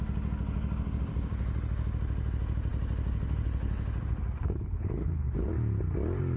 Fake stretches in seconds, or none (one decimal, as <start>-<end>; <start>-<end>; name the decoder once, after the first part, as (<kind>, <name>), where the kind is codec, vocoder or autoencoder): 4.4-5.5 (codec, HILCodec)